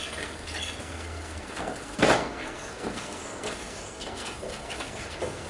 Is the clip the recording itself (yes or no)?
no